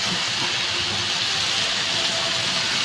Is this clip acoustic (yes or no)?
yes